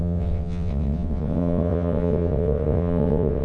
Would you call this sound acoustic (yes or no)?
no